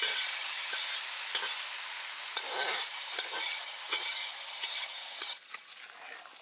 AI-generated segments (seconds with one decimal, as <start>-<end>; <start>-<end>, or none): 0.0-0.9; 2.9-5.7